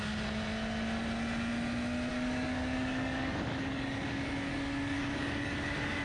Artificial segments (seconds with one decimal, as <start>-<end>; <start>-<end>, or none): 2.1-6.0